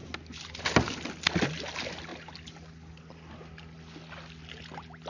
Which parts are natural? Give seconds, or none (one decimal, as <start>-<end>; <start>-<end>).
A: 0.0-5.1

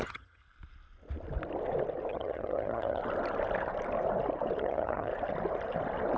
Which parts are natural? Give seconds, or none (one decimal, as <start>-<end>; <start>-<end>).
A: 0.4-2.1; 3.0-4.6; 5.1-6.2

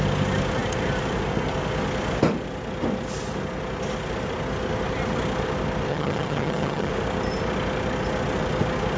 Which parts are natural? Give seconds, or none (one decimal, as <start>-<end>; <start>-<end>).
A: 0.0-5.9; 6.9-9.0

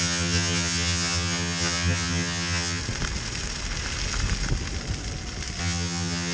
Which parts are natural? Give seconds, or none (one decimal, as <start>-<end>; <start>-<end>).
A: 2.8-5.6

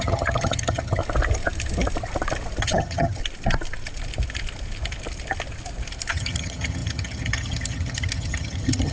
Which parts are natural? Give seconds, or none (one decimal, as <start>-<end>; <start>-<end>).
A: 1.0-2.6; 3.2-6.1